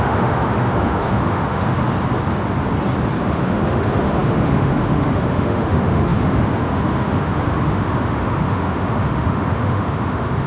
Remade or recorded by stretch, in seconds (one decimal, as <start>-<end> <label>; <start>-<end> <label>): 0.0-1.8 remade; 1.8-3.2 recorded; 3.2-10.5 remade

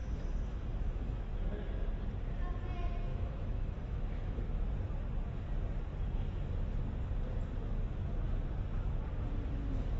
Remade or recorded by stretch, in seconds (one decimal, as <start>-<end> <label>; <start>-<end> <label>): 0.0-1.2 remade; 1.2-3.1 recorded; 3.1-4.4 remade; 4.4-10.0 recorded

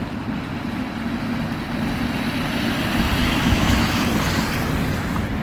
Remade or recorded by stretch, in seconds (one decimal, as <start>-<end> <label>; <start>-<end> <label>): 0.0-3.2 recorded; 3.2-4.1 remade; 4.1-5.4 recorded